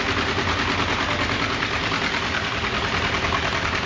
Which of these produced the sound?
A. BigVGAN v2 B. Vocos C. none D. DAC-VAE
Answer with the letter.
C